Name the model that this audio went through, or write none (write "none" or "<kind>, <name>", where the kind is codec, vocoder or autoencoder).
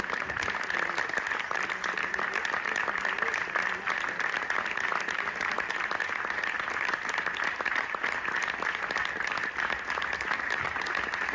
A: none